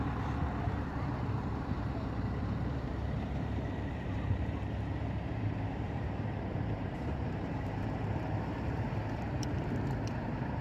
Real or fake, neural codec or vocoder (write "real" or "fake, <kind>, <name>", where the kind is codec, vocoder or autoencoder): fake, vocoder, BigVGAN v2